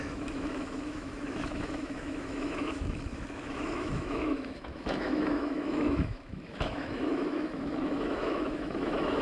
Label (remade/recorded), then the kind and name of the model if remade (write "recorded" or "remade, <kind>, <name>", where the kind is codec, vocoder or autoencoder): remade, autoencoder, DAC-VAE